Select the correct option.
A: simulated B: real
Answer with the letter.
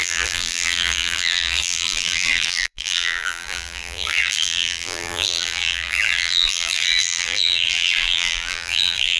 A